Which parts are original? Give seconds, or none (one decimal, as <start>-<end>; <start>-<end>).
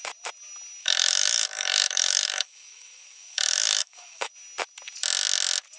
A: 0.0-0.8; 4.3-5.8